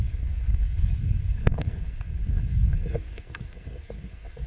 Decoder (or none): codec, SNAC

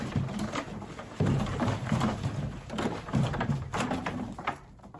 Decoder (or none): vocoder, BigVGAN v2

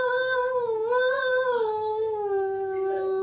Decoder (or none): autoencoder, DAC-VAE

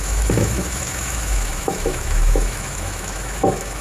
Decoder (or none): autoencoder, DAC-VAE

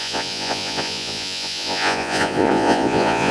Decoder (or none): vocoder, Vocos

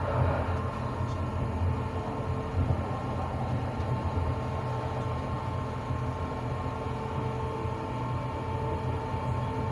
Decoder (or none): none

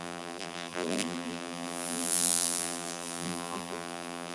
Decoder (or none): vocoder, BigVGAN v2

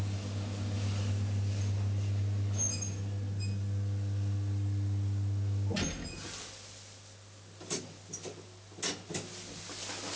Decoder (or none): none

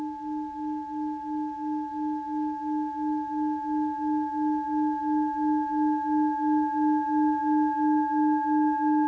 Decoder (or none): none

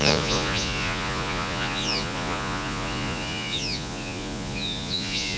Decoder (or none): vocoder, Vocos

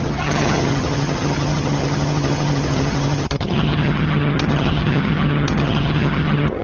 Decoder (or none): vocoder, HiFi-GAN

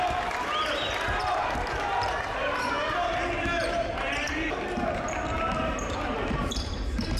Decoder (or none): vocoder, BigVGAN v2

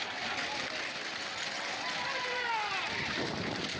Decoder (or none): none